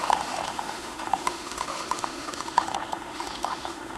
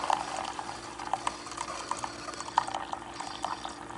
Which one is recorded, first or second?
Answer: second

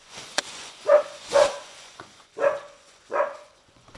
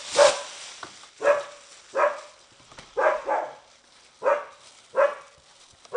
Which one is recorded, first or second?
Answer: second